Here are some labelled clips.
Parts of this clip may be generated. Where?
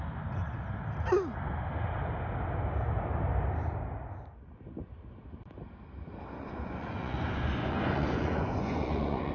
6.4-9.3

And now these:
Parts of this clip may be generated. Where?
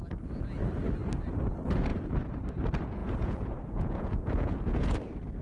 3.0-5.0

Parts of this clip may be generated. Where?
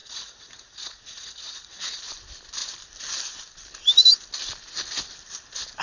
0.0-2.0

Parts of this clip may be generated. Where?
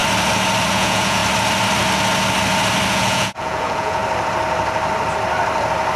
0.7-1.2; 2.9-4.0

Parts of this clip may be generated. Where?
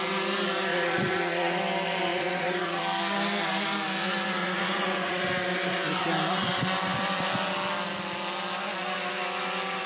0.7-1.6; 2.1-2.8; 4.4-5.2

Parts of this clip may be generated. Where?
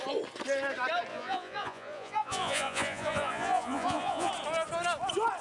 1.1-4.3